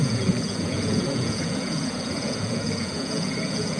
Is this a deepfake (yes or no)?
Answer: yes